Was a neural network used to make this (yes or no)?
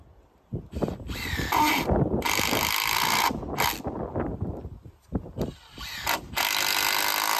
no